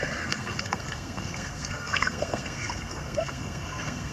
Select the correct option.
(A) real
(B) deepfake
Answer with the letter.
B